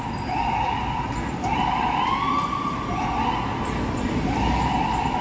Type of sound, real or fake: real